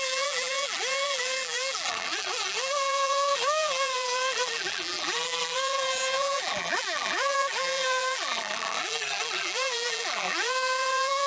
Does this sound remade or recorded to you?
remade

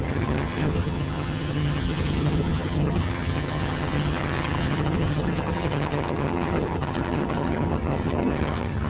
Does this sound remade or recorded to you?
remade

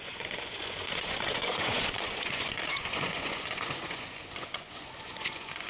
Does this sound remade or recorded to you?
remade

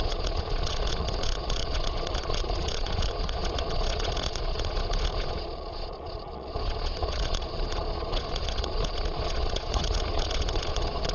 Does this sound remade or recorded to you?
remade